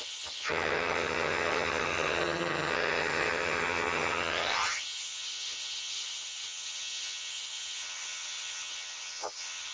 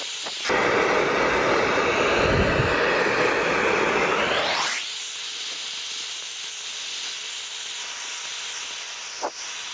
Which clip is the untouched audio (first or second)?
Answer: second